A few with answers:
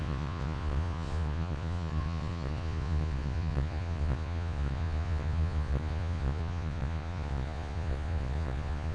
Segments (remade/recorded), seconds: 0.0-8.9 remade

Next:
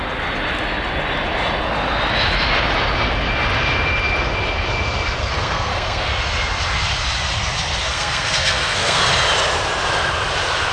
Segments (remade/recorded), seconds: 0.0-5.2 recorded; 5.2-6.1 remade; 6.1-7.8 recorded; 7.8-9.0 remade; 9.0-10.7 recorded